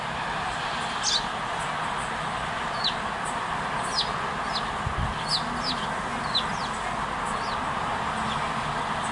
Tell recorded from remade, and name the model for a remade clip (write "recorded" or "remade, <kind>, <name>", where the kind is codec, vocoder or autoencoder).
recorded